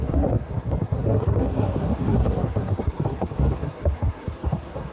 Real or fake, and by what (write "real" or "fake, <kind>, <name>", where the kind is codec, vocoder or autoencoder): fake, codec, SNAC